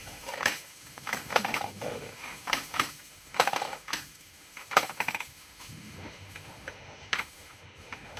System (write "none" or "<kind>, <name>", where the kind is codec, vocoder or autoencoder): autoencoder, DAC-VAE